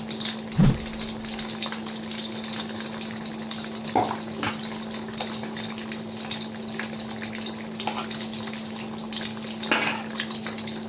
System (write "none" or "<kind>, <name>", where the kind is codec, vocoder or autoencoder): none